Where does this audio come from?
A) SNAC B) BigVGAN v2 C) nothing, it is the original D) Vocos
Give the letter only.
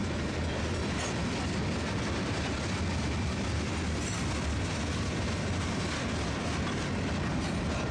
C